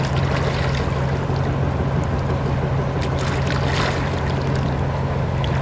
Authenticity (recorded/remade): recorded